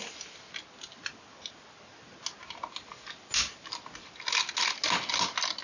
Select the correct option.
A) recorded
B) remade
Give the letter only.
A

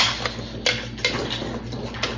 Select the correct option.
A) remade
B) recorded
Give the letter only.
B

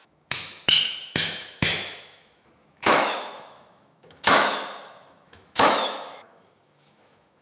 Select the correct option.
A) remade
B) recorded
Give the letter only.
A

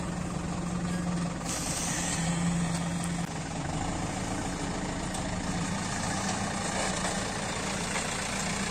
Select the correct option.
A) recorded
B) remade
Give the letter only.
A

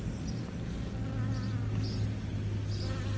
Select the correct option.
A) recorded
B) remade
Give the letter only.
A